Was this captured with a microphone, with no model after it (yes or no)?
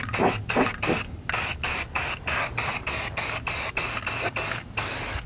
yes